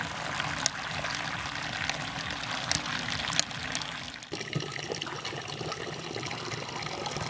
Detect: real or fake real